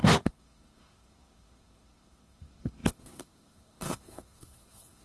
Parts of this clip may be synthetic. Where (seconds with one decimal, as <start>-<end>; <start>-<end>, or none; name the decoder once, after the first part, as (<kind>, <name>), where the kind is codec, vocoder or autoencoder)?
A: 0.0-5.0 (codec, SNAC)